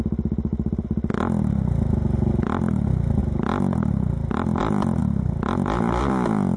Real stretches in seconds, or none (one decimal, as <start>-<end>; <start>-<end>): 0.0-6.6

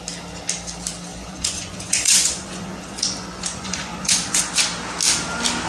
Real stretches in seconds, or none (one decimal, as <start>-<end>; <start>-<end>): 0.0-1.1; 4.5-5.7

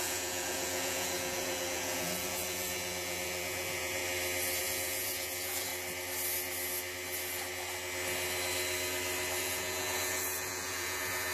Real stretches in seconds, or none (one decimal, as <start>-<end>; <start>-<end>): 4.0-4.6; 5.7-9.4